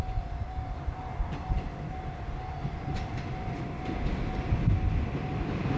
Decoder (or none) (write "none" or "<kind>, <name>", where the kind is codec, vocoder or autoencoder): none